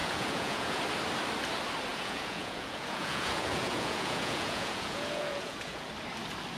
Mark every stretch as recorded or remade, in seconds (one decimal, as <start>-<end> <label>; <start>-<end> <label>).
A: 0.0-0.8 remade; 0.8-1.9 recorded; 1.9-5.9 remade; 5.9-6.6 recorded